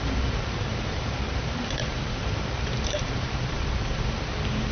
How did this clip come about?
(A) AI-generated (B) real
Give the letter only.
A